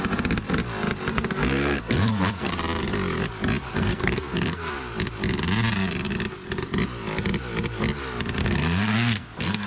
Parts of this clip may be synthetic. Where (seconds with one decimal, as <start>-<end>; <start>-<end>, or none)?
1.1-2.5; 3.7-4.7; 8.4-9.7